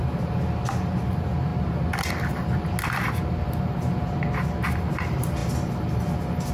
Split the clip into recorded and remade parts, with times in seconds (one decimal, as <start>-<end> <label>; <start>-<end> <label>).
0.0-6.5 recorded